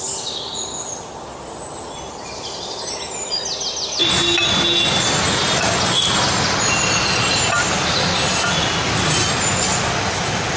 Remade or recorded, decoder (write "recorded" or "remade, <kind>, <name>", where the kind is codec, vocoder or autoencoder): recorded